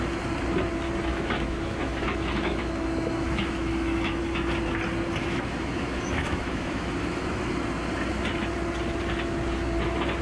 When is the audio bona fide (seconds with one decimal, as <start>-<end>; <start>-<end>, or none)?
0.0-1.1; 4.2-5.2; 7.5-10.2